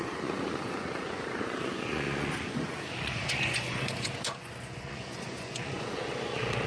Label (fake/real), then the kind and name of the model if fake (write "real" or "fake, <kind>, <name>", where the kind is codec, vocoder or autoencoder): fake, vocoder, Vocos